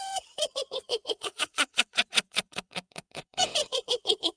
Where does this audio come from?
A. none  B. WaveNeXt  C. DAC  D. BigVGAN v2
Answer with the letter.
B